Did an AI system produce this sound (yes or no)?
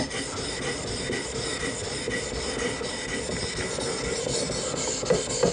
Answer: no